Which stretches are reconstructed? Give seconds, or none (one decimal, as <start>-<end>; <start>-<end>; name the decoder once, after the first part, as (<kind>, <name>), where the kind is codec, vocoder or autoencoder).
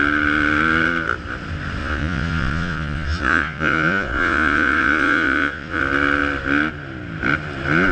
1.8-5.8 (vocoder, Vocos)